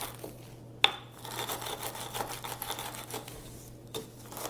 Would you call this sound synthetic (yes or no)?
no